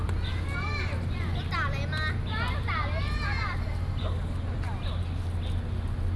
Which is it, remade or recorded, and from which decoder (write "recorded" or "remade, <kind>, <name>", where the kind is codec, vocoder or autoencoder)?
recorded